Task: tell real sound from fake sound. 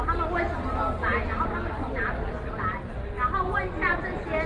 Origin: real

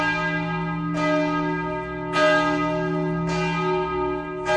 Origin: real